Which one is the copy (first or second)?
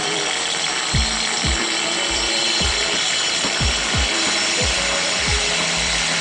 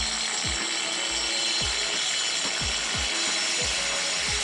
first